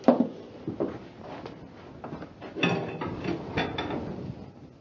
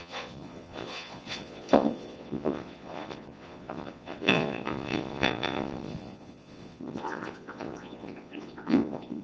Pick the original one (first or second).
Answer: first